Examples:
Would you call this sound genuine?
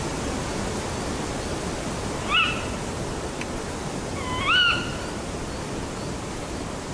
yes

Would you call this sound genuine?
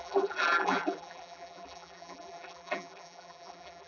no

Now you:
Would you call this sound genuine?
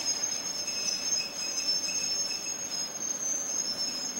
yes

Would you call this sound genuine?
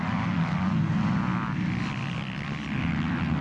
yes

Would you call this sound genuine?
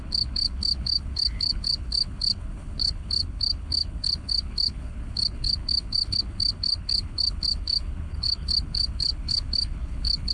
no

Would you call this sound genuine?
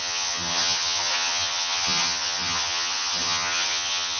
no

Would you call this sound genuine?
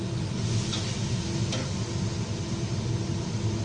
yes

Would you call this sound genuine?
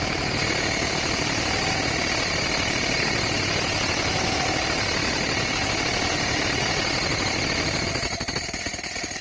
yes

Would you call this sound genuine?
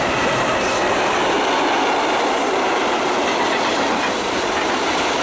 no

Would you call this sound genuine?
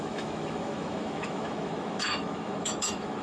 no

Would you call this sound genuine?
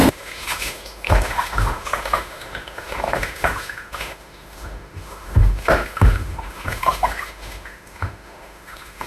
no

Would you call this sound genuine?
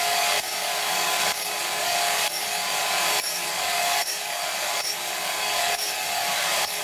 no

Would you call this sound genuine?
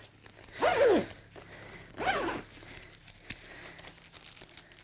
yes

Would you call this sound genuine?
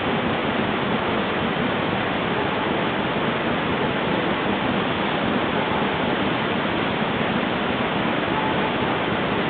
yes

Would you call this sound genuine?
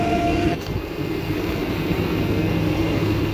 no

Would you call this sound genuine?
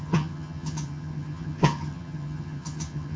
no